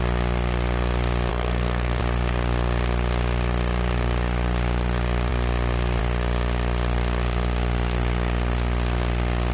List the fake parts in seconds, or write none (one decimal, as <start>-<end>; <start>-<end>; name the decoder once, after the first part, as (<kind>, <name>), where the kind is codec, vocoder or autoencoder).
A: 1.3-2.0 (codec, SNAC)

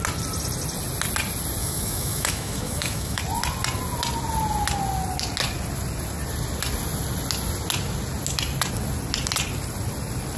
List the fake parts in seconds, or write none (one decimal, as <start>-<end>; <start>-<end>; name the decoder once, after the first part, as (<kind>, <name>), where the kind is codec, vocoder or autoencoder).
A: 1.6-3.2 (autoencoder, DAC-VAE)

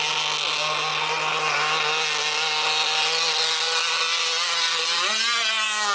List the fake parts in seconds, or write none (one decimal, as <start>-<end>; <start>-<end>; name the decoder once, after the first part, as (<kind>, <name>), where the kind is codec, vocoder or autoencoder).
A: none

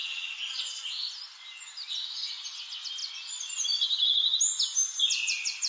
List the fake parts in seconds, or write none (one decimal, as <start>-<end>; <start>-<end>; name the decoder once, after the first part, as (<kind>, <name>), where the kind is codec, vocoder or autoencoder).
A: 0.0-0.6 (vocoder, Vocos)